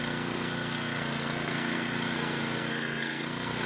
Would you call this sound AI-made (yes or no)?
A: yes